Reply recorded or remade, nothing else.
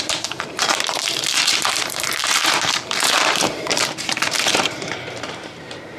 remade